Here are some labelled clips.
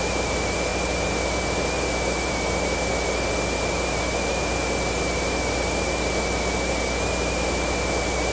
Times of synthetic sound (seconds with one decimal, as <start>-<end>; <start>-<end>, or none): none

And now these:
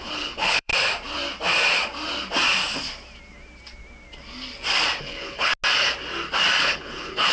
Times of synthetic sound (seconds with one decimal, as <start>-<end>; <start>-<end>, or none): 0.0-0.7; 5.0-5.5; 6.6-7.3

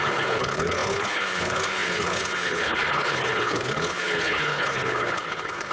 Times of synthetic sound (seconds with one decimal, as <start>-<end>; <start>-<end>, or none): 0.0-5.7

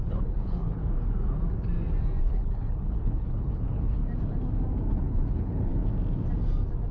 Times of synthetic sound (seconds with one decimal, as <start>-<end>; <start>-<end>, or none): 0.0-0.8; 2.2-4.0; 4.9-5.7

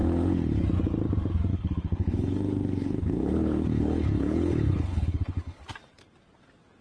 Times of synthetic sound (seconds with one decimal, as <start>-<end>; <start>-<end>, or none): 0.0-0.6; 1.5-5.6

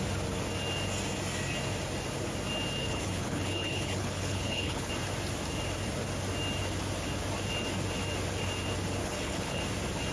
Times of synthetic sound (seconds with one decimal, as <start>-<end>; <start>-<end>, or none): 2.8-4.9; 9.0-9.6

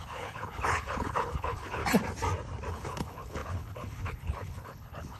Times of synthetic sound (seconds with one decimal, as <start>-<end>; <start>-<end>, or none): 0.0-1.8; 2.7-5.2